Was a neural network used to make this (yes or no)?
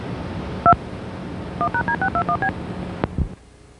no